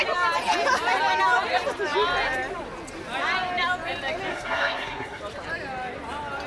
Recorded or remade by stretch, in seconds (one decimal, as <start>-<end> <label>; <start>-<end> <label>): 0.0-4.3 recorded; 4.3-5.2 remade; 5.2-6.5 recorded